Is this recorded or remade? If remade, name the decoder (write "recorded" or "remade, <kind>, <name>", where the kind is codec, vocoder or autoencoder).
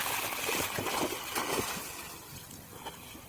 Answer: recorded